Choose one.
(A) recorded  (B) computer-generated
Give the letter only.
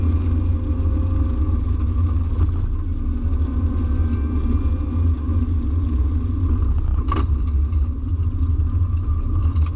A